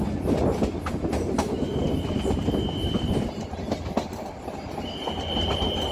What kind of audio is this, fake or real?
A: real